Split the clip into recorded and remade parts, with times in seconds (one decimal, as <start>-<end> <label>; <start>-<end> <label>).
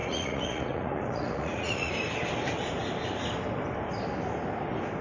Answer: 0.0-1.9 remade; 1.9-5.0 recorded